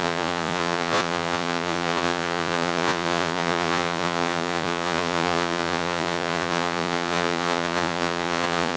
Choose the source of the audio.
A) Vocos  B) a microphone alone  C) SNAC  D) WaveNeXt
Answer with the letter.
A